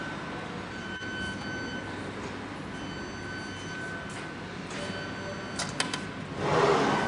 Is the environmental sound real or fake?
real